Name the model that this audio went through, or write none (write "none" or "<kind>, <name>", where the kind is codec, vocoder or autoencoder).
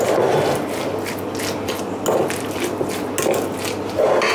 none